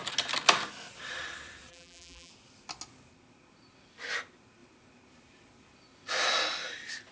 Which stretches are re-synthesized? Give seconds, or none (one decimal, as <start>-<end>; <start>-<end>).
1.7-2.3